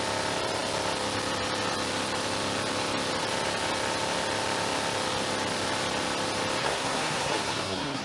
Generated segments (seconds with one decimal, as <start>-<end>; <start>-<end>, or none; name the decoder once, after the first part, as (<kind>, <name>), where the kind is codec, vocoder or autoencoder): 6.6-8.0 (codec, SNAC)